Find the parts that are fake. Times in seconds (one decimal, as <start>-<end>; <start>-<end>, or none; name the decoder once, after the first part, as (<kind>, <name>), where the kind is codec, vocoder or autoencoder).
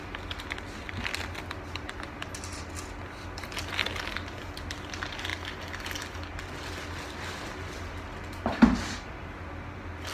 none